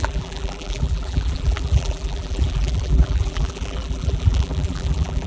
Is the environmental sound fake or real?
fake